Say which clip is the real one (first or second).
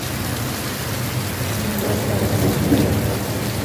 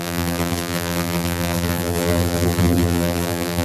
first